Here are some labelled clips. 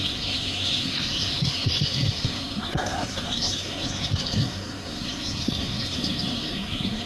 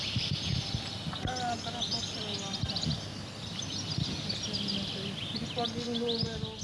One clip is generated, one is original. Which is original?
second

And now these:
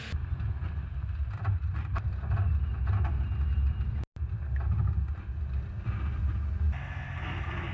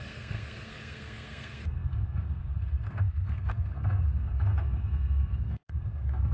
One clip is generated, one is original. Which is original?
first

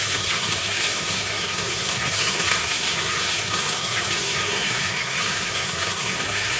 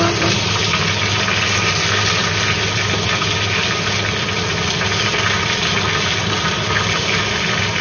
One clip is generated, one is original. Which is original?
second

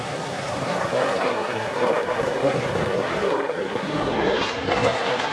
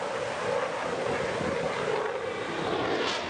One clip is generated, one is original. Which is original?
second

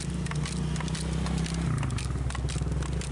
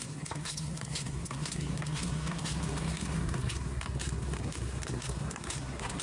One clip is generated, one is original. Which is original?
first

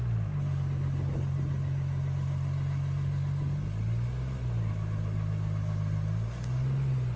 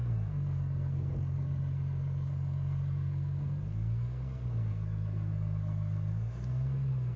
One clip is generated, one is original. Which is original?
first